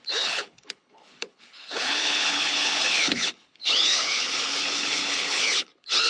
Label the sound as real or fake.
fake